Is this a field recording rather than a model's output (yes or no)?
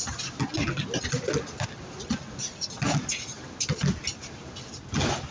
yes